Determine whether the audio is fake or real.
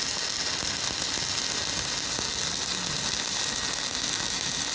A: real